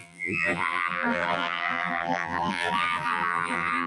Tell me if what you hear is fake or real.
fake